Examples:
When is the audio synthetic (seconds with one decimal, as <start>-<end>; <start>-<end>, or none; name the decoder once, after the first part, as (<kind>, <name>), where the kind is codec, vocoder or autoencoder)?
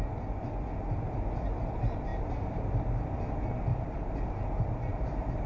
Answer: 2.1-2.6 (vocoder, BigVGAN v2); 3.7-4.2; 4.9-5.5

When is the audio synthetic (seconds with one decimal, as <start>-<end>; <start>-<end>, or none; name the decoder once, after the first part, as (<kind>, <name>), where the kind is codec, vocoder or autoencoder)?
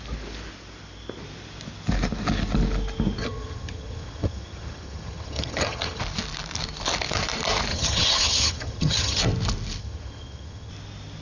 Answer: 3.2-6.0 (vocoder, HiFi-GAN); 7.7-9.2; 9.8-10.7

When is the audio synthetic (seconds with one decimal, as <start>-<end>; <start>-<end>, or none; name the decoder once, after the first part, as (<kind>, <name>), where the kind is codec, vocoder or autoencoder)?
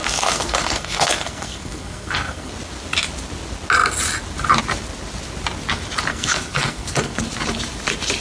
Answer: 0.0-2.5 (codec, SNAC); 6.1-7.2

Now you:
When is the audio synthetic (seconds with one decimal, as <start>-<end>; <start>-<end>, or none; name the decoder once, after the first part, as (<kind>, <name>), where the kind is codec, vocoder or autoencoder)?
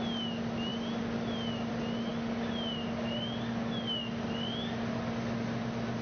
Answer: none